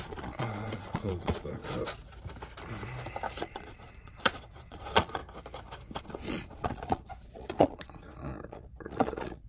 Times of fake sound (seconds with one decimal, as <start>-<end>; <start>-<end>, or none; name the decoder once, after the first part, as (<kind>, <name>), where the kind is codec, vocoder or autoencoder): 0.0-1.6 (vocoder, Vocos); 3.4-5.2; 6.0-9.5